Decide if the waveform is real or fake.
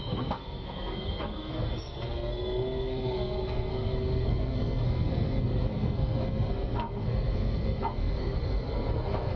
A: fake